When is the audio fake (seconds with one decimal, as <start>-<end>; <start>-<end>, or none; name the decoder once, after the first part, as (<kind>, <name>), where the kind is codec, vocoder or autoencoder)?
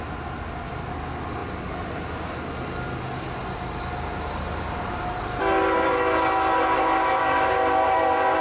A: none